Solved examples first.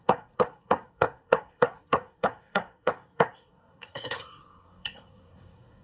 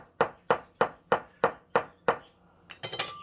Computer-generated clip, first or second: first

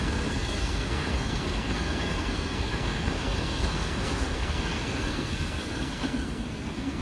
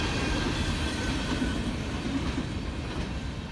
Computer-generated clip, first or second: first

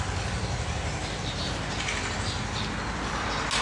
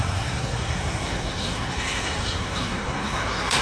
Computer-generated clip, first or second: second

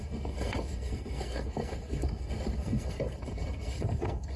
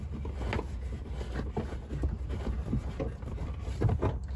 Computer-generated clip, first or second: first